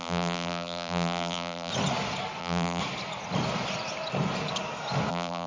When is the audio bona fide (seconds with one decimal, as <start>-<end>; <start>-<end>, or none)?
1.7-2.4; 2.8-5.1